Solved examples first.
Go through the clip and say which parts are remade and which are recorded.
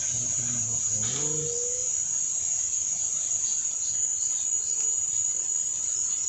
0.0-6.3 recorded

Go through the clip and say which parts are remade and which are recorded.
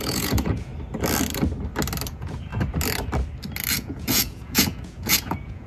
0.0-0.7 remade; 0.7-2.1 recorded; 2.1-2.5 remade; 2.5-3.7 recorded; 3.7-5.7 remade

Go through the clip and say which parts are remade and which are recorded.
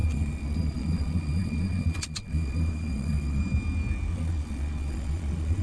0.0-3.4 remade; 3.4-4.1 recorded; 4.1-5.6 remade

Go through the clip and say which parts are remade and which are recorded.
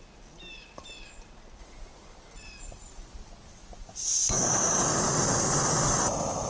0.0-6.5 recorded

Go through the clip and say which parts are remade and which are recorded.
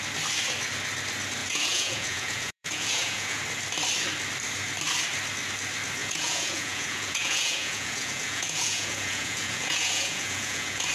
0.0-1.4 recorded; 1.4-3.4 remade; 3.4-6.0 recorded; 6.0-10.9 remade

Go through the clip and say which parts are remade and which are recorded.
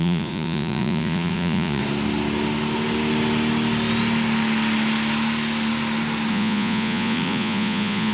0.0-1.8 remade; 1.8-6.3 recorded; 6.3-8.1 remade